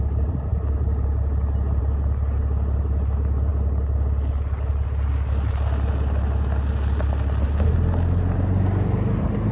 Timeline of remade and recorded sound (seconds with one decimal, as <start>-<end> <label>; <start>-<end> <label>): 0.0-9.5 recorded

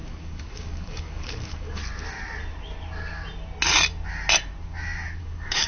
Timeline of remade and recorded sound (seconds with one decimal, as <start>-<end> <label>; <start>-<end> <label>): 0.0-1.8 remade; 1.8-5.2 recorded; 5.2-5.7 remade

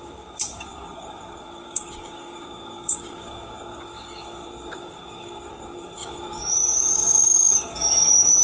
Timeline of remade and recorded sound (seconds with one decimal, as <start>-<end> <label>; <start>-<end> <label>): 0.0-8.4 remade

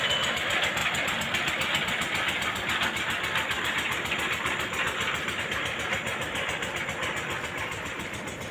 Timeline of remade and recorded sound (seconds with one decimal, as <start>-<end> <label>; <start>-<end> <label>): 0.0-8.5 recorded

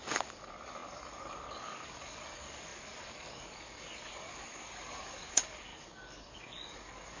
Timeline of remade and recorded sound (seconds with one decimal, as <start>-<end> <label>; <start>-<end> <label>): 0.0-7.2 remade

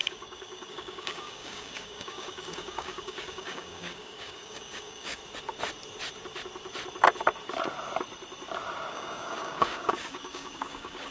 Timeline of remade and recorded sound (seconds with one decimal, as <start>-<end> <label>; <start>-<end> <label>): 0.0-5.2 remade; 5.2-8.9 recorded; 8.9-11.1 remade